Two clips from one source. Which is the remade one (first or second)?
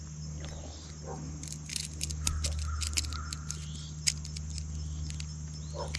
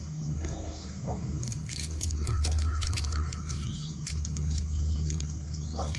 second